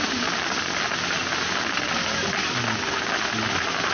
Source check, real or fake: real